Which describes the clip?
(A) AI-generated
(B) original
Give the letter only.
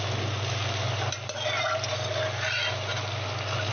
B